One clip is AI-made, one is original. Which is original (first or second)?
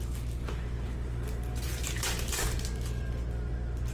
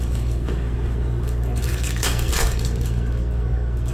first